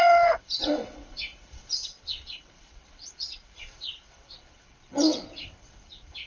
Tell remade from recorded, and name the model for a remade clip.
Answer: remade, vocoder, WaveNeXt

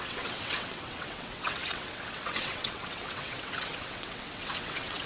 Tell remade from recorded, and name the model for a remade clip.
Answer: remade, vocoder, WaveNeXt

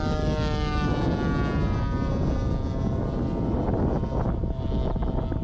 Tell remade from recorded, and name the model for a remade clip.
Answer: recorded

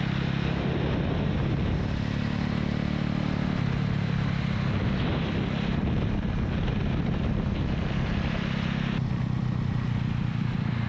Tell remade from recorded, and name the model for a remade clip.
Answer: recorded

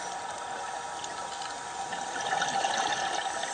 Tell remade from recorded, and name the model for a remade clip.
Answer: recorded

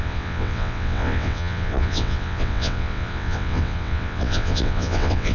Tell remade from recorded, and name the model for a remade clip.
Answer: remade, vocoder, WaveNeXt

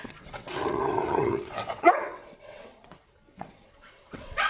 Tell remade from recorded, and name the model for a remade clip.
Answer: remade, vocoder, WaveNeXt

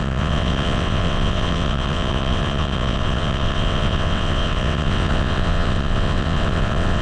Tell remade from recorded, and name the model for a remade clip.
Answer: remade, vocoder, WaveNeXt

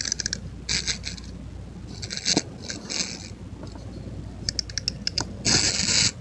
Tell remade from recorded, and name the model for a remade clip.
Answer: recorded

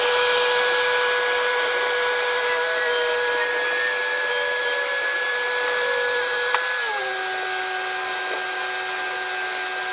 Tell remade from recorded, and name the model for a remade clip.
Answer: recorded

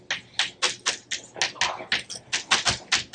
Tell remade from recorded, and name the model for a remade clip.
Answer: recorded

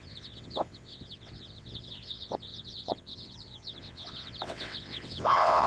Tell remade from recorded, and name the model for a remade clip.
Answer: remade, vocoder, WaveNeXt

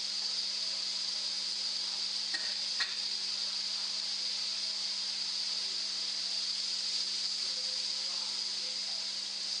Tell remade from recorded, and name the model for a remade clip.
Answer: recorded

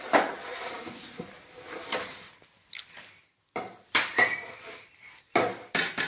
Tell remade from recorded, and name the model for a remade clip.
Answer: recorded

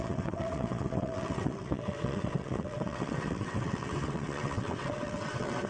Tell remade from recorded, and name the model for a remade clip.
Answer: remade, vocoder, WaveNeXt